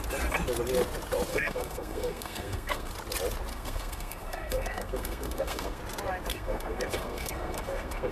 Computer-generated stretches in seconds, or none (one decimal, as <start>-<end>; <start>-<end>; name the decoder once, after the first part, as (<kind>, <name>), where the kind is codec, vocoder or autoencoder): 1.3-2.9 (codec, SNAC); 3.5-5.8; 6.3-8.1